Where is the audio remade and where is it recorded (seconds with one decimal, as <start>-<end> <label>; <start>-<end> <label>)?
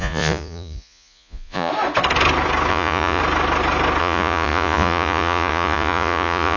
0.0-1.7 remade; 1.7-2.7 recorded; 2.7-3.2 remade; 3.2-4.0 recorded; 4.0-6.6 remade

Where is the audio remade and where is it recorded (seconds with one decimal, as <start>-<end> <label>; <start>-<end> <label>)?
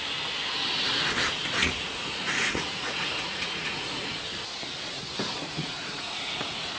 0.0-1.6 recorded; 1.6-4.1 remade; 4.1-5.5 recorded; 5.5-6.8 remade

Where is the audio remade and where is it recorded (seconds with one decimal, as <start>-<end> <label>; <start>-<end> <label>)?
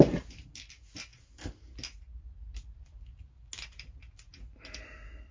0.0-5.3 recorded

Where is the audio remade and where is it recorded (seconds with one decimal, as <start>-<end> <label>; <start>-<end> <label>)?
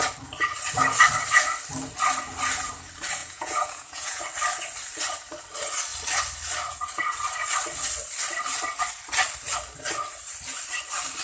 0.0-3.2 recorded; 3.2-4.2 remade; 4.2-11.2 recorded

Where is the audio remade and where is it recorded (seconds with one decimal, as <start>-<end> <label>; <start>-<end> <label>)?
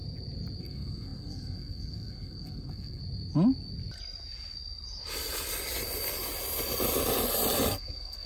0.0-0.6 recorded; 0.6-3.0 remade; 3.0-7.7 recorded; 7.7-8.3 remade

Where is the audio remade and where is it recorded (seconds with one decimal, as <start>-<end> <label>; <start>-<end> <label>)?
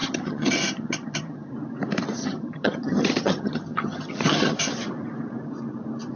0.0-1.5 remade; 1.5-2.2 recorded; 2.2-4.7 remade; 4.7-6.2 recorded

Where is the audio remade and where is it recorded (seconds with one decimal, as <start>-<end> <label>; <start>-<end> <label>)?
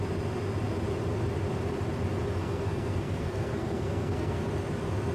0.0-2.4 recorded; 2.4-4.5 remade; 4.5-5.1 recorded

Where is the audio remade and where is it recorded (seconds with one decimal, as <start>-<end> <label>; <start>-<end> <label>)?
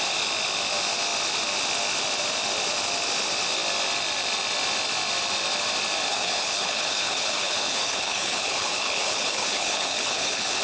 0.0-6.1 recorded; 6.1-10.6 remade